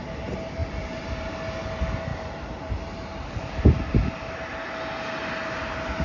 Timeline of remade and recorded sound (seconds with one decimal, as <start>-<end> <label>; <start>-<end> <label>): 0.0-0.6 recorded; 0.6-1.2 remade; 1.2-2.1 recorded; 2.1-3.3 remade; 3.3-6.0 recorded